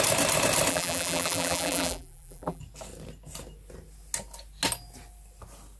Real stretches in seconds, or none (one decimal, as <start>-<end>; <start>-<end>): 0.0-0.7; 2.6-5.8